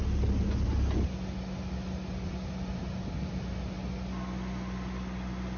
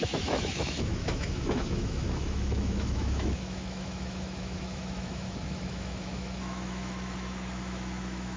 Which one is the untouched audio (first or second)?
first